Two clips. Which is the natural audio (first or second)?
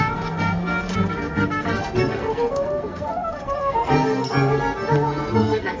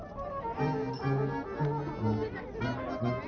second